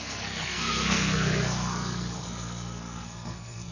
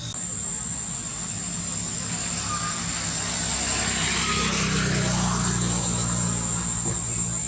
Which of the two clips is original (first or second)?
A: second